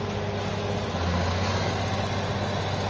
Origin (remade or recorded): recorded